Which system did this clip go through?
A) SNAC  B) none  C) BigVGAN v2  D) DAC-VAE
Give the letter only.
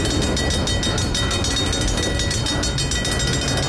B